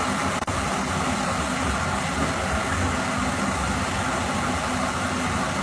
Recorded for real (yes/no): yes